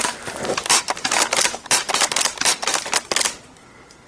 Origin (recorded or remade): recorded